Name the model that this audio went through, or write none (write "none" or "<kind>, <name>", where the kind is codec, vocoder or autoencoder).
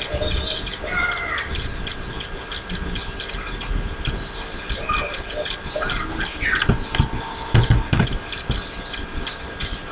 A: none